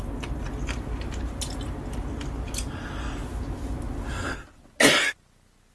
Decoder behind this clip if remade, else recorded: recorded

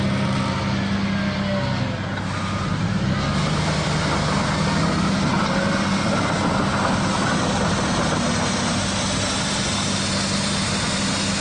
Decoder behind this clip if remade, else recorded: recorded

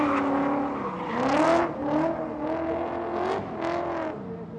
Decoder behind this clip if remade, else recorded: recorded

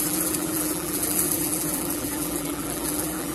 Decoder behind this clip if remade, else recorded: remade, vocoder, BigVGAN v2